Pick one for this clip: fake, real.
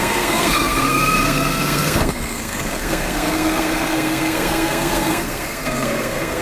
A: fake